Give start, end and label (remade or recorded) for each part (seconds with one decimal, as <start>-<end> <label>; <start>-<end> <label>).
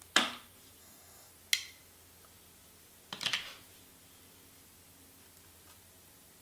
0.0-0.8 recorded; 0.8-1.3 remade; 1.3-6.4 recorded